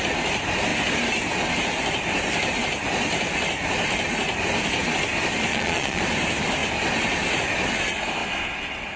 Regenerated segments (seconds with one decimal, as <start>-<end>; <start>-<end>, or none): 5.5-6.0